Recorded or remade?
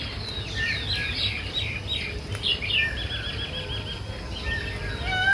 recorded